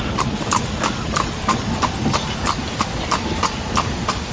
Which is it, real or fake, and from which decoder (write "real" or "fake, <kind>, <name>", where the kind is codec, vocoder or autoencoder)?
real